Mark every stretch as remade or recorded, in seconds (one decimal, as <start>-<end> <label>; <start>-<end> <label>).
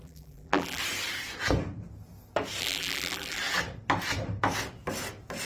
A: 0.0-0.8 remade; 0.8-2.6 recorded; 2.6-3.4 remade; 3.4-5.5 recorded